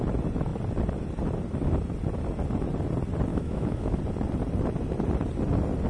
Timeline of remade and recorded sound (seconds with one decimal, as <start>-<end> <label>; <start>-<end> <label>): 0.0-3.3 recorded; 3.3-4.0 remade; 4.0-5.9 recorded